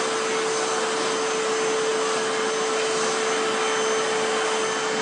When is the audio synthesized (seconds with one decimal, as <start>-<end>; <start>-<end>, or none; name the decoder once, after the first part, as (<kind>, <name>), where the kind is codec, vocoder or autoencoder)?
none